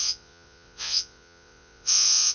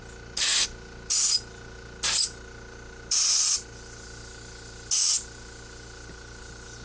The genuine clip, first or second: second